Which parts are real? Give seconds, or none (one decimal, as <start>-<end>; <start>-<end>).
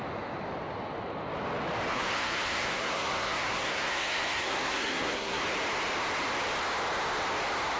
0.0-1.9; 5.4-7.8